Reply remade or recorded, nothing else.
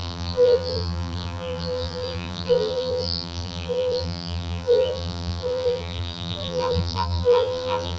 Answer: remade